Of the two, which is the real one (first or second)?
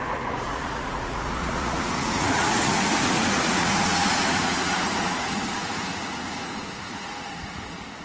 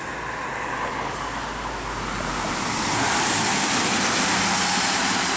second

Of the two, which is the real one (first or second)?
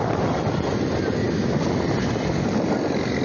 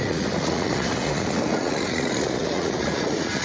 first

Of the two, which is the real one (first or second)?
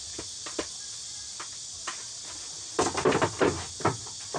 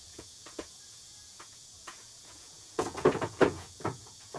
first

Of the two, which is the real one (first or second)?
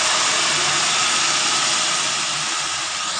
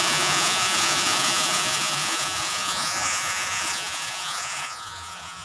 first